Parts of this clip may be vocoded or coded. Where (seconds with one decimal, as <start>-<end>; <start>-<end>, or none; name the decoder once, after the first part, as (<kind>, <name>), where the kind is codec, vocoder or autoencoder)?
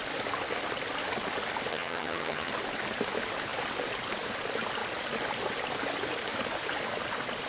1.7-2.5 (vocoder, HiFi-GAN)